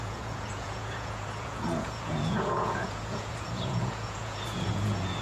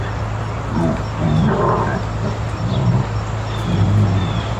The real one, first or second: second